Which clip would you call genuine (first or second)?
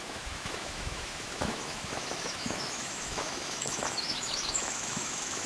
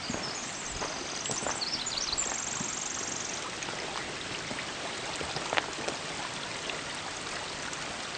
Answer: second